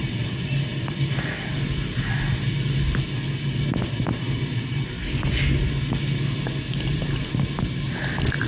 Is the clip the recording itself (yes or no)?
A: yes